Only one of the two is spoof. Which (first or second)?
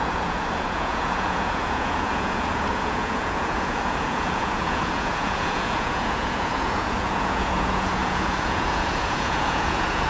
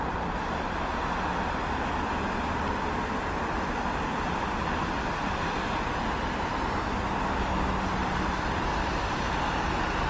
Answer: first